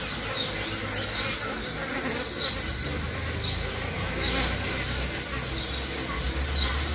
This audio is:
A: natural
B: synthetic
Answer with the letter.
A